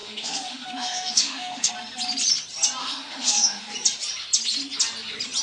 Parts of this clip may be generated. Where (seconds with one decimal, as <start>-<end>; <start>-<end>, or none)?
0.0-1.7; 2.8-3.7